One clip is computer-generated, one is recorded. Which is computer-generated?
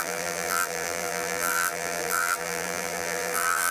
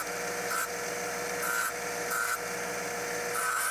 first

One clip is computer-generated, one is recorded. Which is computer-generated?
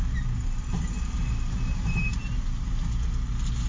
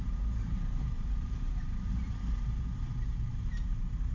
second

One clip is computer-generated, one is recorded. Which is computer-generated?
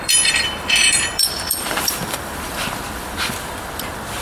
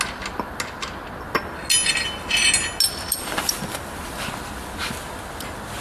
first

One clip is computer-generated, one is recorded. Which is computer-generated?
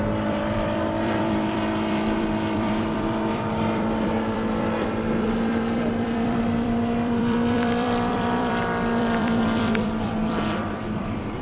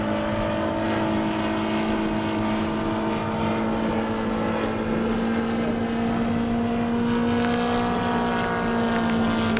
first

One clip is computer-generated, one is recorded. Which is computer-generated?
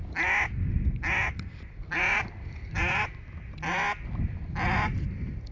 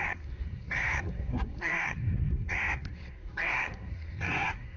second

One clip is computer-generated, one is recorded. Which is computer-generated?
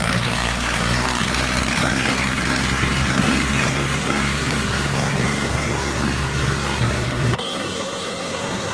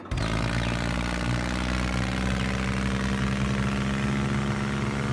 first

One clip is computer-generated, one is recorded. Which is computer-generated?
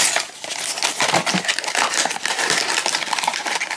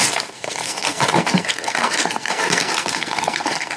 second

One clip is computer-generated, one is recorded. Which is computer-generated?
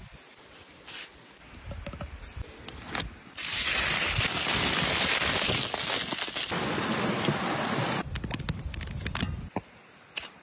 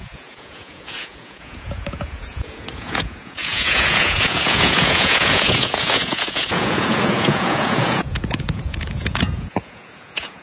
second